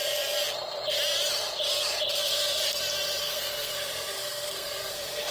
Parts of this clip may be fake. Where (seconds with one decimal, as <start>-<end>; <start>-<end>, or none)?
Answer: 3.2-5.3